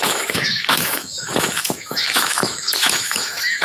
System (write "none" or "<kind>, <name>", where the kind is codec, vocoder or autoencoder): autoencoder, DAC-VAE